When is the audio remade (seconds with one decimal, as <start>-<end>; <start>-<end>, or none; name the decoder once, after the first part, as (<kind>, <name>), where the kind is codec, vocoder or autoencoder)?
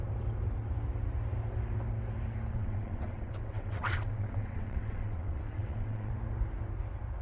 2.5-6.1 (vocoder, WaveNeXt)